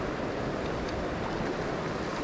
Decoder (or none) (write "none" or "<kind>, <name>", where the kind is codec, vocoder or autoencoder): none